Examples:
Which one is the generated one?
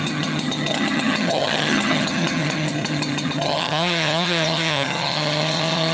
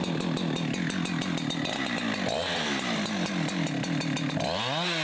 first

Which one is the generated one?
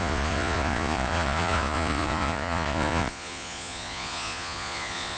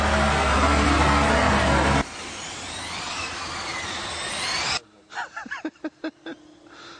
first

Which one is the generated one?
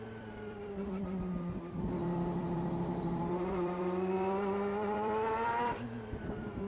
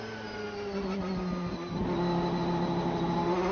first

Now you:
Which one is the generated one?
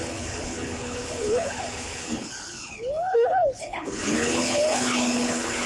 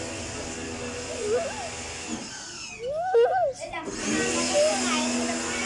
first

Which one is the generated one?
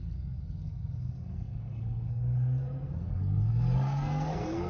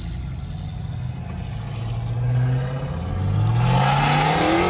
first